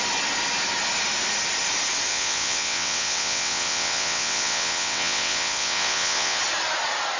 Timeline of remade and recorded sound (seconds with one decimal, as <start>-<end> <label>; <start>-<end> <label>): 0.0-2.1 recorded; 2.1-6.4 remade; 6.4-7.2 recorded